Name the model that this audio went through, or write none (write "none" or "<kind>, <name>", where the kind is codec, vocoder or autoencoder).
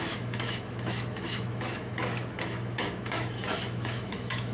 autoencoder, DAC-VAE